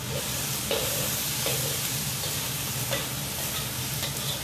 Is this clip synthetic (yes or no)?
no